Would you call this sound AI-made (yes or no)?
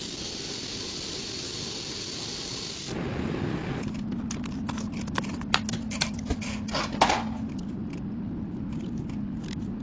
no